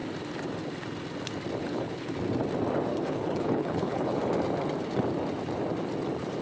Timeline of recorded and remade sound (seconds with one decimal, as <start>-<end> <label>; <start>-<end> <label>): 0.0-1.6 recorded; 1.6-2.1 remade; 2.1-2.9 recorded; 2.9-4.2 remade; 4.2-6.4 recorded